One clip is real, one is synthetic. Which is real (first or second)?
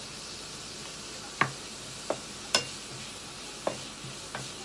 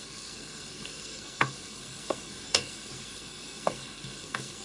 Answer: first